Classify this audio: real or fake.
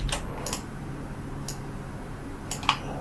real